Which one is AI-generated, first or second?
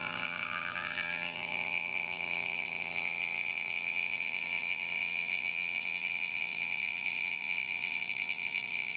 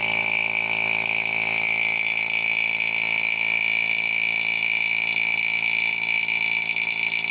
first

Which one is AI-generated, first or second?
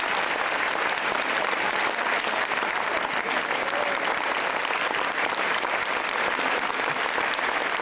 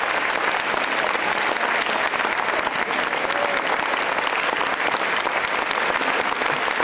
first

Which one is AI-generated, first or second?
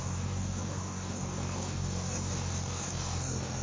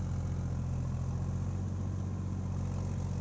first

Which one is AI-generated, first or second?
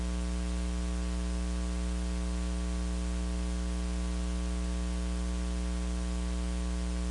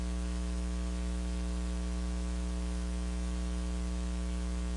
second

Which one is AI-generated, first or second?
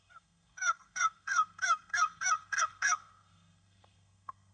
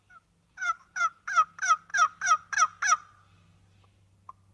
first